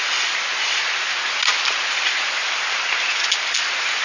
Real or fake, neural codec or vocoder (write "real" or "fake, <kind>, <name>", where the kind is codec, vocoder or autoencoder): real